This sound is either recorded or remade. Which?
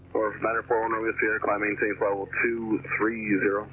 recorded